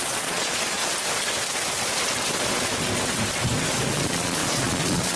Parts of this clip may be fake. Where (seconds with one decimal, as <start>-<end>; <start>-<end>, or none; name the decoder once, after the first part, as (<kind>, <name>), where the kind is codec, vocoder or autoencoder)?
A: 0.0-0.8 (vocoder, Vocos); 3.9-5.2

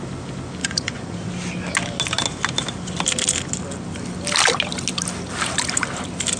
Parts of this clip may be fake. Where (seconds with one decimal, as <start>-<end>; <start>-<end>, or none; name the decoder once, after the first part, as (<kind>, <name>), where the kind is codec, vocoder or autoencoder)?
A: 0.6-1.3 (vocoder, Vocos)

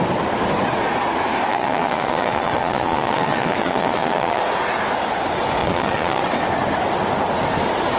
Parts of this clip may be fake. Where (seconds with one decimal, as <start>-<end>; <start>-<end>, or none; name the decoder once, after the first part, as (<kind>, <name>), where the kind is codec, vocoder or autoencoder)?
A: 1.5-4.4 (vocoder, Vocos); 5.6-6.2

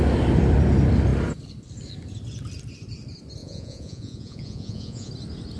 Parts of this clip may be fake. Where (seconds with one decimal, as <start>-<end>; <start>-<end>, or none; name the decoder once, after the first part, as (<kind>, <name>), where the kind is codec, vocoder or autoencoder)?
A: 3.4-5.1 (vocoder, Vocos)